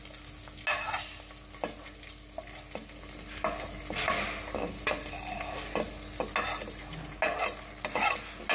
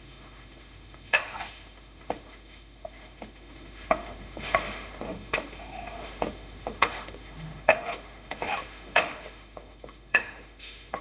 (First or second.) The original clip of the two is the first